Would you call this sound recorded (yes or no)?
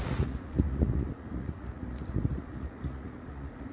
no